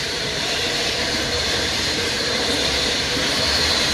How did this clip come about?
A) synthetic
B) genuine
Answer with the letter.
A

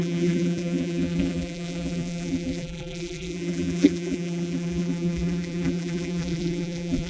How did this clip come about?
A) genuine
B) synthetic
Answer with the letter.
B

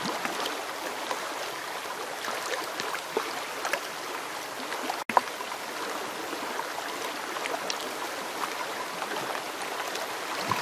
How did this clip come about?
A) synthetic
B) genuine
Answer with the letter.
B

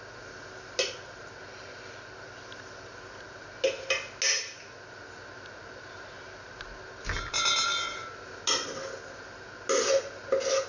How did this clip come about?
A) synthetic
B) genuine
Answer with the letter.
B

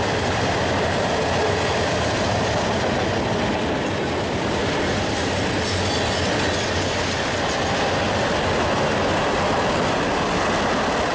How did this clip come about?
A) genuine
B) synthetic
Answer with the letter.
A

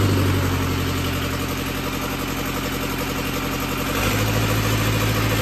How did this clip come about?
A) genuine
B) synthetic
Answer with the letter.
A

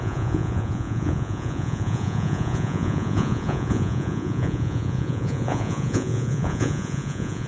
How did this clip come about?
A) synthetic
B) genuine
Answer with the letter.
A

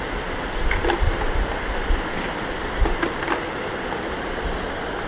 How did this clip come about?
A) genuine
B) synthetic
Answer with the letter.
A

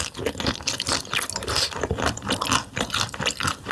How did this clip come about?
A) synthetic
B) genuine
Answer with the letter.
B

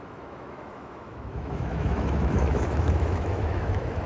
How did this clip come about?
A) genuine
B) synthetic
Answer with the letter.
B